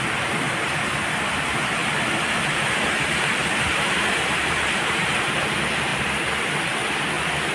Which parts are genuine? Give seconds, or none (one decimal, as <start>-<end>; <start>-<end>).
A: 0.0-1.8; 5.3-5.9; 6.4-7.5